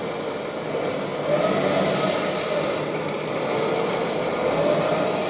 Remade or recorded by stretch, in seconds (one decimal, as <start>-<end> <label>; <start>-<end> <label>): 0.0-5.3 recorded